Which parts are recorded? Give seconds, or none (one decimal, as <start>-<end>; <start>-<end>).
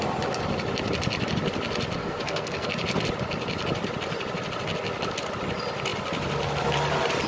0.0-2.0; 2.7-7.3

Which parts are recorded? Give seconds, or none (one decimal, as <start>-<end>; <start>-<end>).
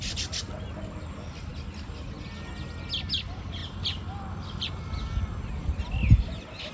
0.0-6.7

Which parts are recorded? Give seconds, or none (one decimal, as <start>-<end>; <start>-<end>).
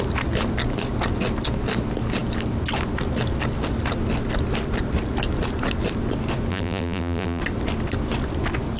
0.0-6.5; 7.4-8.8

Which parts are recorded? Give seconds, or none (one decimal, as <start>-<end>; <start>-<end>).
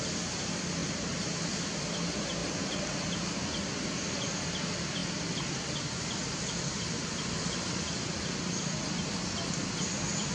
0.0-0.8; 1.5-5.0; 7.3-10.3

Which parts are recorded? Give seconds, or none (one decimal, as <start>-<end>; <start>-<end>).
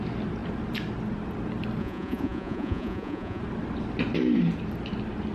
0.0-1.8; 3.4-5.3